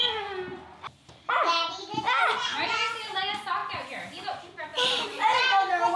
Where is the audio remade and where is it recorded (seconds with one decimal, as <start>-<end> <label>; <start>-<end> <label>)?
0.0-6.0 recorded